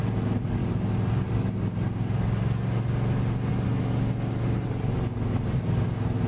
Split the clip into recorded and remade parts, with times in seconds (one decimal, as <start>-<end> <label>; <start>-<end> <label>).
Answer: 0.0-6.3 recorded

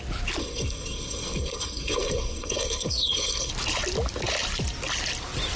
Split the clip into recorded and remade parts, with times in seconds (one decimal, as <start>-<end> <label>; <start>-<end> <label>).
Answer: 0.0-0.4 recorded; 0.4-3.5 remade; 3.5-5.6 recorded

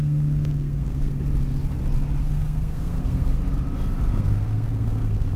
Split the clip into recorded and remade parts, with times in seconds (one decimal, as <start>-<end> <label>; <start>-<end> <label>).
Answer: 0.0-1.2 remade; 1.2-2.2 recorded; 2.2-3.4 remade; 3.4-4.1 recorded; 4.1-5.4 remade

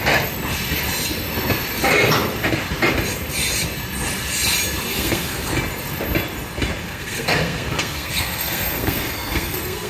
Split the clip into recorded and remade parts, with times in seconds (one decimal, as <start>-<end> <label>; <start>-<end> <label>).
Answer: 0.0-4.9 recorded; 4.9-5.5 remade; 5.5-6.8 recorded; 6.8-9.9 remade

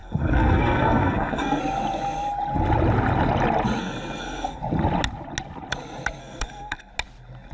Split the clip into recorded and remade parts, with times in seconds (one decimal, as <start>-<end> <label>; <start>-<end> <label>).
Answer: 0.0-1.6 remade; 1.6-3.8 recorded; 3.8-4.6 remade; 4.6-6.2 recorded; 6.2-6.9 remade; 6.9-7.5 recorded

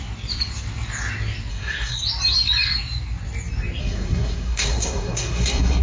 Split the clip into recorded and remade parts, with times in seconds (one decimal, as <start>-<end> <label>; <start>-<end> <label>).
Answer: 0.0-1.5 recorded; 1.5-2.0 remade; 2.0-3.8 recorded; 3.8-5.8 remade

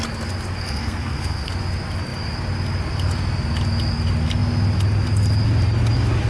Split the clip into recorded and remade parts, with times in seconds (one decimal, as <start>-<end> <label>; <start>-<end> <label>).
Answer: 0.0-0.6 recorded; 0.6-1.5 remade; 1.5-6.3 recorded

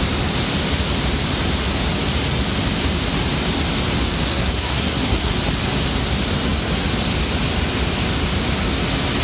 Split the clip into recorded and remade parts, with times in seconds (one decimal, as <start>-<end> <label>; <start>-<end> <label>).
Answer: 0.0-4.3 recorded; 4.3-5.3 remade; 5.3-9.2 recorded